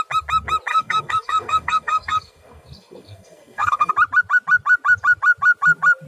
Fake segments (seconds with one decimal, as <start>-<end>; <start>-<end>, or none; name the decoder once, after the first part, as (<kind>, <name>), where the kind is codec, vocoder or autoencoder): 0.7-3.9 (codec, SNAC)